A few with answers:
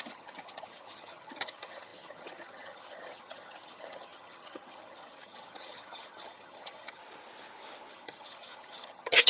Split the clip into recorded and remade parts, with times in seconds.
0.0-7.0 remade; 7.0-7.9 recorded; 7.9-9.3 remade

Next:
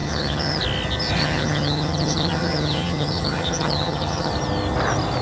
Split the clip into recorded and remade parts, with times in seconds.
0.0-0.6 remade; 0.6-1.2 recorded; 1.2-4.3 remade; 4.3-5.2 recorded

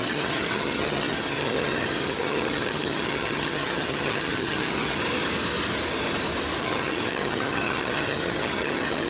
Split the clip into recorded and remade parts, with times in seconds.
0.0-5.0 remade; 5.0-6.6 recorded; 6.6-9.1 remade

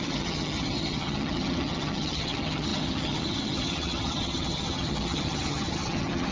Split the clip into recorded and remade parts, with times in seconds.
0.0-6.3 remade

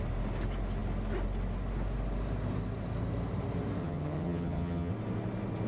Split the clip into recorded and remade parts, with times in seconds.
0.0-3.8 recorded; 3.8-4.9 remade; 4.9-5.7 recorded

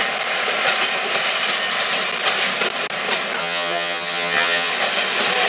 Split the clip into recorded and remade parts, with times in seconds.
0.0-3.4 recorded; 3.4-4.7 remade; 4.7-5.5 recorded

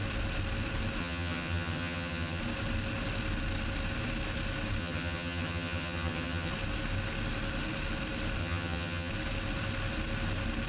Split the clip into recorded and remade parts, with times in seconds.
0.0-1.0 recorded; 1.0-2.4 remade; 2.4-4.8 recorded; 4.8-6.5 remade; 6.5-8.4 recorded; 8.4-9.1 remade; 9.1-10.7 recorded